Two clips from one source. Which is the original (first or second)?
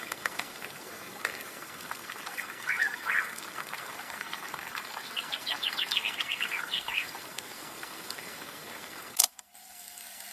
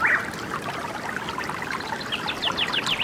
second